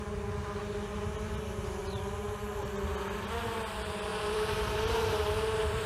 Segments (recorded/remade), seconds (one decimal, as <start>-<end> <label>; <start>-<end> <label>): 0.0-4.1 recorded; 4.1-5.9 remade